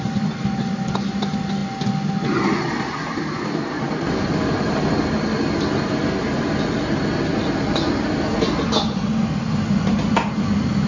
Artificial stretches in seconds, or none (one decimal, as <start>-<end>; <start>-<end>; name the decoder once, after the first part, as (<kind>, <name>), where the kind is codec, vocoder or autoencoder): none